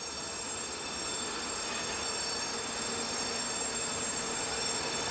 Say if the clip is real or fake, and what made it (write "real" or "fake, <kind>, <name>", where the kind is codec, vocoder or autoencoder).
real